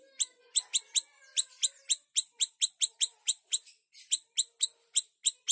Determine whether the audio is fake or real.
real